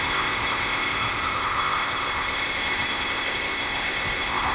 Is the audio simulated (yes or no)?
yes